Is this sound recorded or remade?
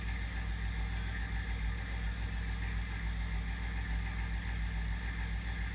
recorded